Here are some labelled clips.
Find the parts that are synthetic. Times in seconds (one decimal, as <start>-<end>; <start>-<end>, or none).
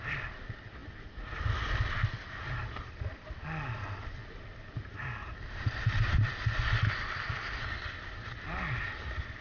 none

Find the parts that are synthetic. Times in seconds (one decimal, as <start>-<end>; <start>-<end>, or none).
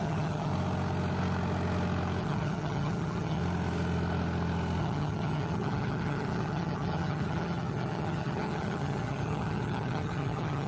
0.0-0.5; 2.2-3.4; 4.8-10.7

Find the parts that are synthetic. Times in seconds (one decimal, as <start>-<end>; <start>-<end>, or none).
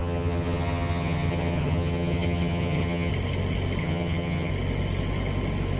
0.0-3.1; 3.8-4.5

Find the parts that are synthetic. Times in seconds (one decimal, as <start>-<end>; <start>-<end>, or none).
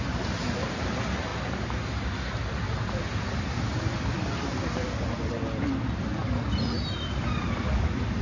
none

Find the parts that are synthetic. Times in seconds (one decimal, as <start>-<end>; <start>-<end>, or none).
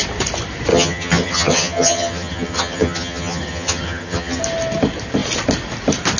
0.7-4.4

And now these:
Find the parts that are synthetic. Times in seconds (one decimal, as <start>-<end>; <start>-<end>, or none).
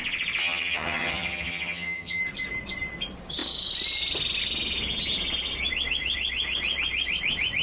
0.4-2.2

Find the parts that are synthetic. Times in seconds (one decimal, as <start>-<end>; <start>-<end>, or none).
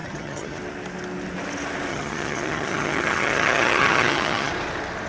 0.0-0.6; 1.9-4.5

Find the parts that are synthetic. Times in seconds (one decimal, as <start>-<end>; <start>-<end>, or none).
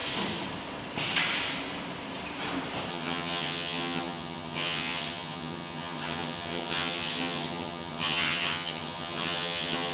2.9-9.9